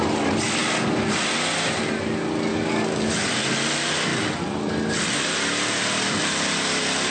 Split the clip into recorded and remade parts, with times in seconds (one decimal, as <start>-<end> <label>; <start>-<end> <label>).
0.0-2.5 recorded; 2.5-3.1 remade; 3.1-7.1 recorded